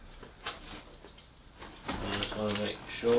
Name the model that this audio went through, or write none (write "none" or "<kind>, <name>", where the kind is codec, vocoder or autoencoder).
none